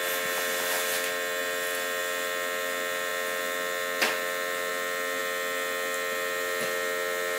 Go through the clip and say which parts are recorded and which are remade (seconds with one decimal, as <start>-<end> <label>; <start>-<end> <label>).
0.0-7.4 recorded